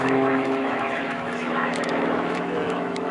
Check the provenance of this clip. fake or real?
fake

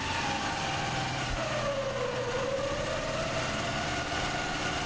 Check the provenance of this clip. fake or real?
real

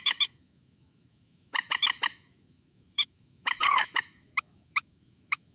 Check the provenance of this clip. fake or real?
fake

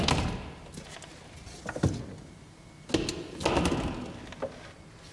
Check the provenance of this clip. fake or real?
real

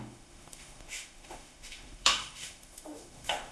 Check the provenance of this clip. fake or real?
fake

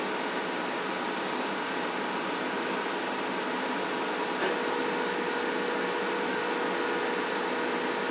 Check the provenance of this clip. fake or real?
real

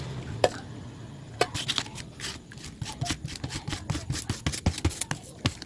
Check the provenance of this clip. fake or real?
real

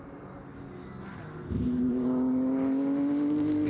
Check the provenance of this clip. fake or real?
real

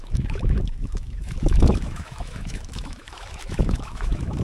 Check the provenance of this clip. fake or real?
fake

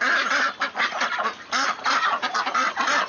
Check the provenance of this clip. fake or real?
real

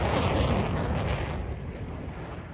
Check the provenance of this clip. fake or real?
real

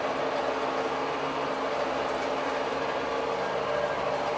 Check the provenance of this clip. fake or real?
real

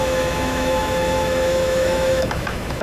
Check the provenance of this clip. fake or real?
fake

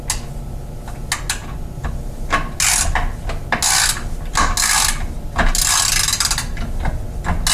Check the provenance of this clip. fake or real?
real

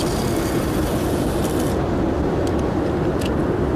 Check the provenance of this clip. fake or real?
real